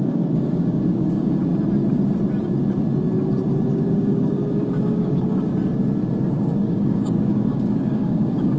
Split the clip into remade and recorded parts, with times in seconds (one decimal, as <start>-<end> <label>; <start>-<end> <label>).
0.0-1.5 remade; 1.5-3.7 recorded; 3.7-5.5 remade; 5.5-6.3 recorded; 6.3-8.6 remade